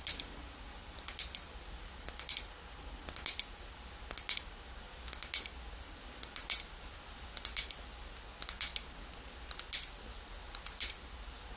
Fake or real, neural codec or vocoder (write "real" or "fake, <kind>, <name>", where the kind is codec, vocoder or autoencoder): real